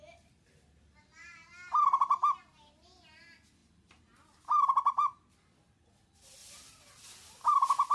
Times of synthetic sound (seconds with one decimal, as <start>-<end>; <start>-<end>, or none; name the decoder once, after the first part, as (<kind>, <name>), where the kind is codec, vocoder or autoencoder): 3.6-5.3 (vocoder, BigVGAN v2)